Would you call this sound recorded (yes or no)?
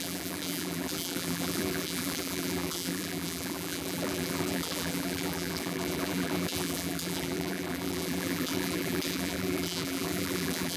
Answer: no